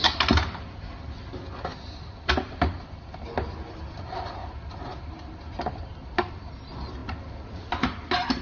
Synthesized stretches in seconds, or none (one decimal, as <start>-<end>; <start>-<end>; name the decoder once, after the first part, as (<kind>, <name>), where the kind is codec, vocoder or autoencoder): none